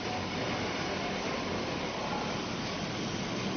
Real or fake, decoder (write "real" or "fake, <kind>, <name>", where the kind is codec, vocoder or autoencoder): real